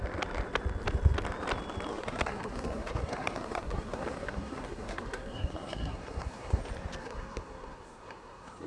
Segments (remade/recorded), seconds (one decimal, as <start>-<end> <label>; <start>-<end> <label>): 0.0-1.9 recorded; 1.9-6.6 remade; 6.6-7.0 recorded; 7.0-8.7 remade